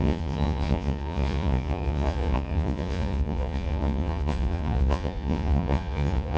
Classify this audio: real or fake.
fake